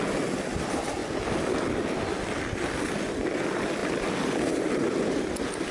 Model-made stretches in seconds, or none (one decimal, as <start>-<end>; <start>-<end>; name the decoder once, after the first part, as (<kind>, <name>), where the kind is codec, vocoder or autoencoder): 3.8-5.0 (vocoder, BigVGAN v2)